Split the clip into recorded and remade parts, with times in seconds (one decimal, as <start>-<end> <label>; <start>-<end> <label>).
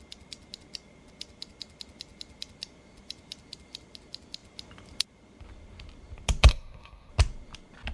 0.0-6.5 recorded; 6.5-7.1 remade; 7.1-7.9 recorded